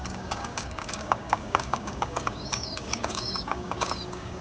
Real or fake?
fake